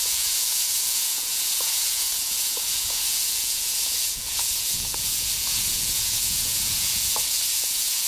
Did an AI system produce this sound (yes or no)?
yes